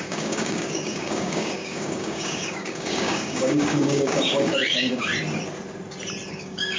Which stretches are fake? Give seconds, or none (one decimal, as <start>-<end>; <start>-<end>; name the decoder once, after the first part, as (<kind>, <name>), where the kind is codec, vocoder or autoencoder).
0.0-5.1 (codec, DAC); 6.3-6.8